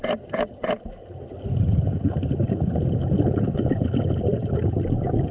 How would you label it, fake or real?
real